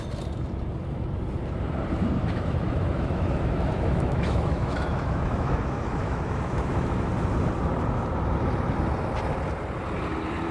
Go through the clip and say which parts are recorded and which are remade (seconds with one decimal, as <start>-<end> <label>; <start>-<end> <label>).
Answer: 0.0-2.2 recorded; 2.2-7.1 remade; 7.1-10.5 recorded